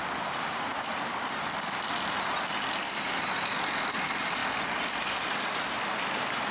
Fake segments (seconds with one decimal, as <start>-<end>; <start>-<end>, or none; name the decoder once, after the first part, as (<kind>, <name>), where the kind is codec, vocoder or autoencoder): 0.0-0.7 (vocoder, BigVGAN v2); 2.8-6.5